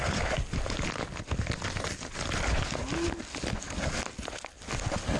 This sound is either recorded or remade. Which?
recorded